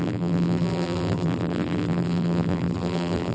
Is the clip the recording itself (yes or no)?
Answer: no